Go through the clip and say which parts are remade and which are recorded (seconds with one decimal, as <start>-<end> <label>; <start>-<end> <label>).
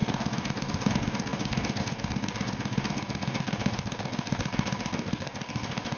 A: 0.0-6.0 remade